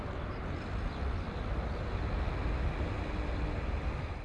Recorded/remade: recorded